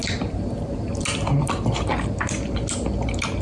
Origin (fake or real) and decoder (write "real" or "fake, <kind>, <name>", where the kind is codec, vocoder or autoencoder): real